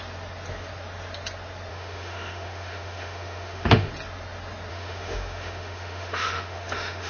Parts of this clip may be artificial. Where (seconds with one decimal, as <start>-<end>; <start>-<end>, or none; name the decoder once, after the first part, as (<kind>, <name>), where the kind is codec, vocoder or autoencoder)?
1.7-3.9 (autoencoder, DAC-VAE); 4.7-7.1